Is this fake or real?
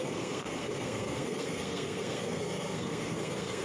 fake